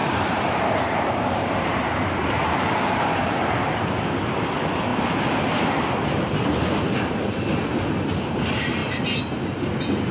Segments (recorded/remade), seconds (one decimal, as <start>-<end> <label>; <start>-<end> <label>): 0.0-3.0 remade; 3.0-10.1 recorded